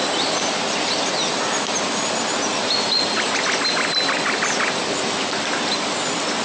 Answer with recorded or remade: recorded